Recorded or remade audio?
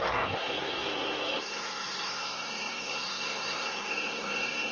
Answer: remade